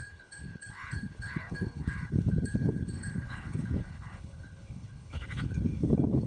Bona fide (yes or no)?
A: no